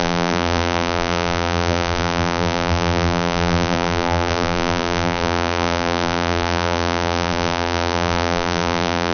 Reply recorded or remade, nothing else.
remade